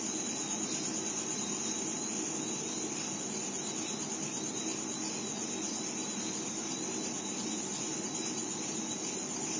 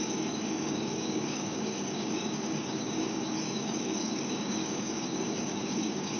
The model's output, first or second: second